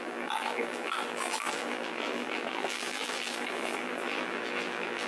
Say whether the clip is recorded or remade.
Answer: remade